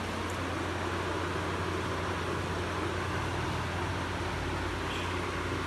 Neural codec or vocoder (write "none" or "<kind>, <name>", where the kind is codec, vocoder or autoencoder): none